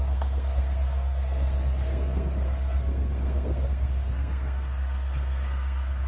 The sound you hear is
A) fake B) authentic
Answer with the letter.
A